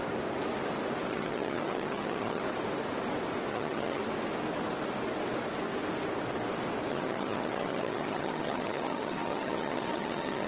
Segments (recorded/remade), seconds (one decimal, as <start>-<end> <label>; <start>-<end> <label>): 0.0-1.1 recorded; 1.1-2.4 remade; 2.4-3.5 recorded; 3.5-4.0 remade; 4.0-6.9 recorded; 6.9-10.5 remade